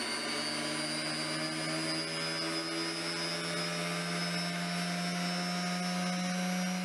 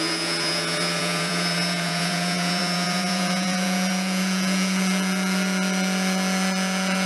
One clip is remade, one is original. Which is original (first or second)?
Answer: first